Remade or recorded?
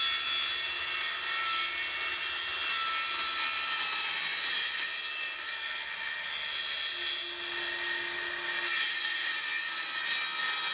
recorded